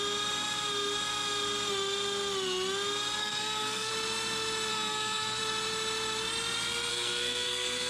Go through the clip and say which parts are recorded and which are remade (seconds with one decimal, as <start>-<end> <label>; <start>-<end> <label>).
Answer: 0.0-3.2 recorded; 3.2-3.9 remade; 3.9-4.7 recorded; 4.7-5.4 remade; 5.4-6.9 recorded; 6.9-7.9 remade